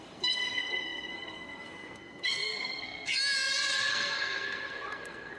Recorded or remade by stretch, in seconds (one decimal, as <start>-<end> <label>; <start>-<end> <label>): 0.0-3.2 remade; 3.2-3.8 recorded; 3.8-5.4 remade